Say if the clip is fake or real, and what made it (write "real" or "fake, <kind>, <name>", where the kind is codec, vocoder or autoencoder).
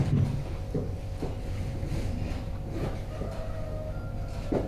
real